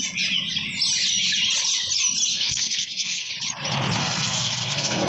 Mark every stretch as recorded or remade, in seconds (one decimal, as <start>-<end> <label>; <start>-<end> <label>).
0.0-2.3 recorded; 2.3-3.3 remade; 3.3-4.0 recorded; 4.0-5.1 remade